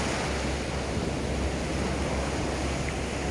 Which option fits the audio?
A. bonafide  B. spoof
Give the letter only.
A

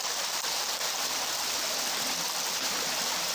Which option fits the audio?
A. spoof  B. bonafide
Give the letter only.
A